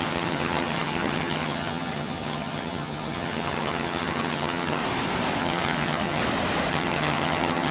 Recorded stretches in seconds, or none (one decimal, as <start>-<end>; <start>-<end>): 4.8-5.4; 6.2-6.7